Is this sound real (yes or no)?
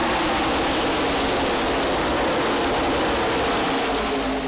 yes